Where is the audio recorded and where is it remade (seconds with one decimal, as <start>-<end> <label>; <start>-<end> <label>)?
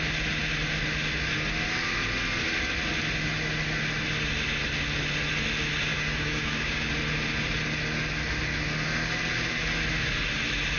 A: 0.0-5.9 recorded; 5.9-6.9 remade; 6.9-10.8 recorded